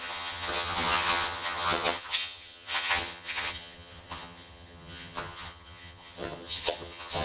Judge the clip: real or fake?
fake